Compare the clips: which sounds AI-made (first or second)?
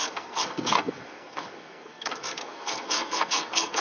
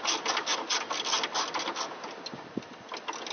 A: first